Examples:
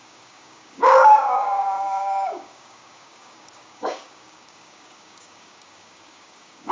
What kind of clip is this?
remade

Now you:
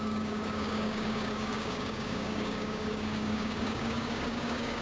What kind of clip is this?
remade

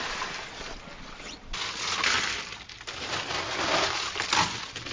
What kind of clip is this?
recorded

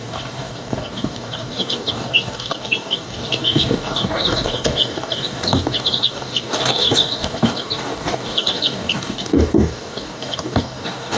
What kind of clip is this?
remade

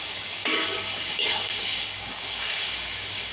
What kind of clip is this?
remade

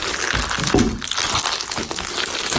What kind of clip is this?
recorded